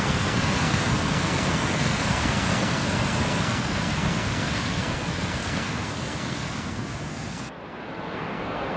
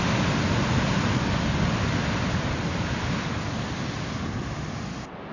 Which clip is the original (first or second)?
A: second